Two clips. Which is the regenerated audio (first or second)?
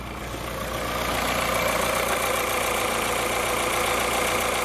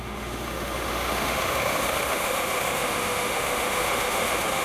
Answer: second